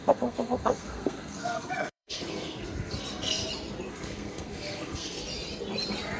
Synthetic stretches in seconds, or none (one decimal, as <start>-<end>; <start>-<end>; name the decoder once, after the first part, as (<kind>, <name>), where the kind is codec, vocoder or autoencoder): 0.0-3.4 (codec, SNAC); 3.9-5.2